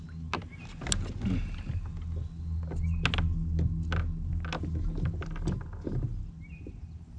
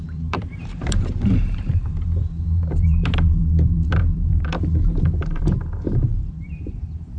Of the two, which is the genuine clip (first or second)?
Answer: first